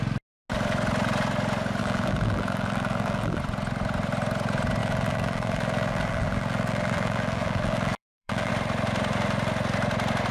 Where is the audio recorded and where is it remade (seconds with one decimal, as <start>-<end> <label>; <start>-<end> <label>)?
0.0-1.8 recorded; 1.8-3.4 remade; 3.4-4.8 recorded; 4.8-8.5 remade; 8.5-10.3 recorded